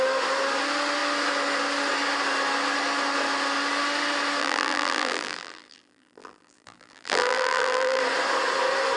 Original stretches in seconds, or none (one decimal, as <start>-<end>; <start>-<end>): 0.0-4.4; 8.0-9.0